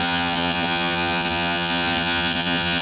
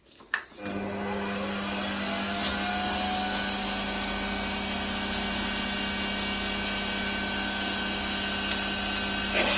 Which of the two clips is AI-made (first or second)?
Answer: first